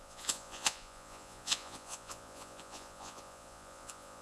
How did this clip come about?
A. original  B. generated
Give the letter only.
B